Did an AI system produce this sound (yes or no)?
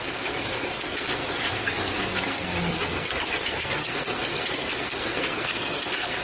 yes